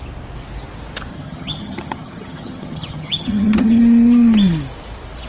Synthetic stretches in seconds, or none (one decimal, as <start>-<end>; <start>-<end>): 1.1-3.8